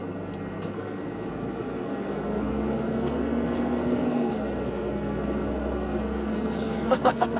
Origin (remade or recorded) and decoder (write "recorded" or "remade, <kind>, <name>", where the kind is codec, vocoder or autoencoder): remade, codec, SNAC